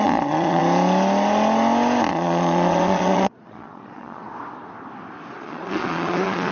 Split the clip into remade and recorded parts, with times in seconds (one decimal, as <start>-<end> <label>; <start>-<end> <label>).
0.0-0.6 remade; 0.6-2.1 recorded; 2.1-4.2 remade; 4.2-5.3 recorded; 5.3-6.5 remade